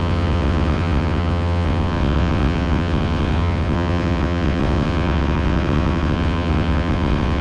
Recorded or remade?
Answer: remade